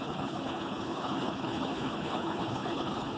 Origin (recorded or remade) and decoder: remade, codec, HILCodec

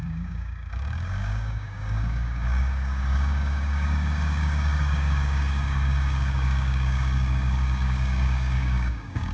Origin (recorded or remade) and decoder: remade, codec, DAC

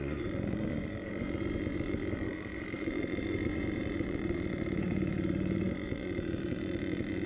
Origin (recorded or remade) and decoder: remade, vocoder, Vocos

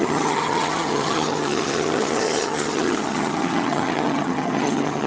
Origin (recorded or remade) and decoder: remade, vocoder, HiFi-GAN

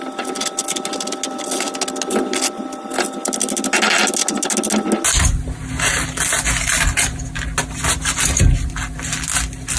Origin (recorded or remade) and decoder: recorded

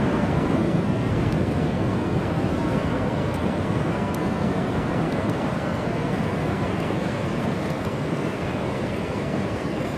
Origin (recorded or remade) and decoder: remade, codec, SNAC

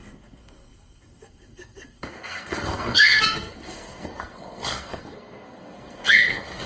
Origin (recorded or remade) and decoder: remade, codec, SNAC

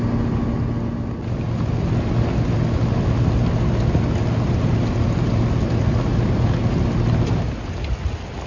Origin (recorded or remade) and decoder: recorded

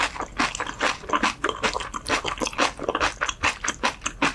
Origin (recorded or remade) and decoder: recorded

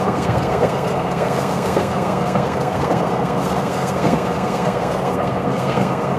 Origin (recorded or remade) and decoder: remade, codec, SNAC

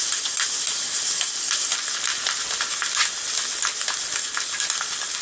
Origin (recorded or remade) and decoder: recorded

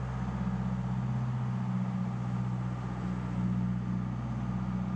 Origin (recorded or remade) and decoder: recorded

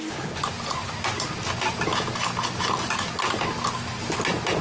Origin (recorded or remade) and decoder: recorded